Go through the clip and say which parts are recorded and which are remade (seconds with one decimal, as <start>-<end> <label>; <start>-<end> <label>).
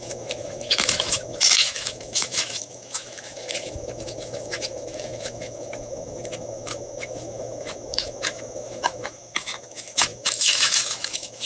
0.0-11.5 remade